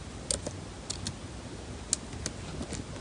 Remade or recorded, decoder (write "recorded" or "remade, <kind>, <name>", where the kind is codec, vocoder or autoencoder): recorded